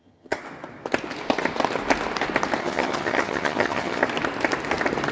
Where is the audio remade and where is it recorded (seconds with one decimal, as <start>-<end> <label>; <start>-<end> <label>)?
0.0-0.4 remade; 0.4-2.6 recorded; 2.6-4.0 remade; 4.0-5.1 recorded